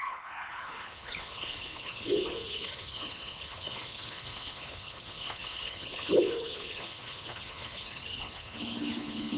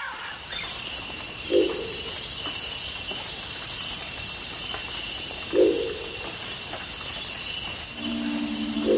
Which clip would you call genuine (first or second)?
second